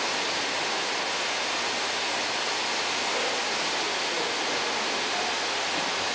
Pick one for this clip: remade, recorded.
recorded